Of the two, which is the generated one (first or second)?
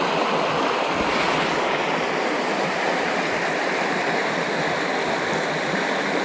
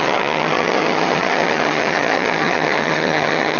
second